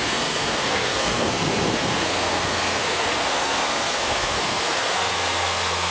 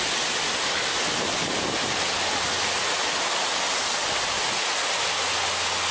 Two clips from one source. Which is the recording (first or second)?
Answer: second